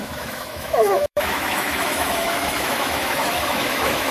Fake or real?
fake